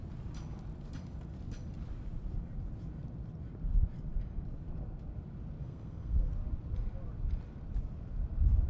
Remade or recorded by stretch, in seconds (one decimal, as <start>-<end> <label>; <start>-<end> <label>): 0.0-5.6 recorded; 5.6-6.3 remade; 6.3-8.7 recorded